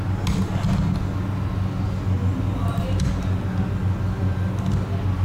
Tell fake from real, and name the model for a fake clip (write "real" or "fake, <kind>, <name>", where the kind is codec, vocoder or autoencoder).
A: real